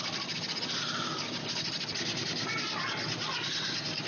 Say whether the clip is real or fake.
real